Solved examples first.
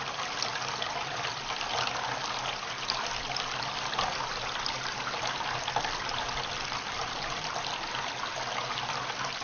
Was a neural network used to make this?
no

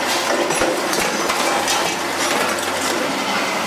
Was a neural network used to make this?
no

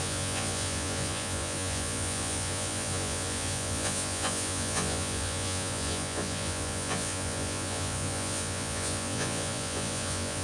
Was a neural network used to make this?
yes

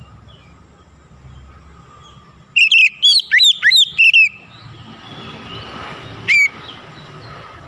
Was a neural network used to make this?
no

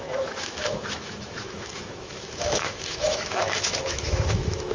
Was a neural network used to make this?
yes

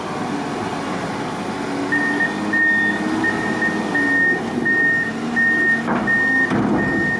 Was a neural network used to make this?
no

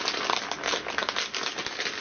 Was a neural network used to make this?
no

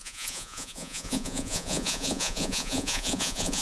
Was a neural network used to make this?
yes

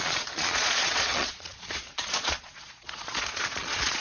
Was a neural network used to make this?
yes